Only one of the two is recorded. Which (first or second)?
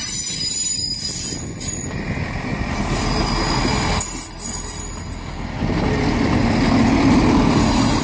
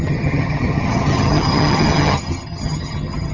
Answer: first